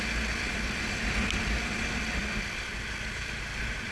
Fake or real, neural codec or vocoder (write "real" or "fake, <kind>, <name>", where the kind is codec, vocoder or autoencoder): real